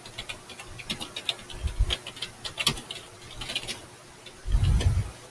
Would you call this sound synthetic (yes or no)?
no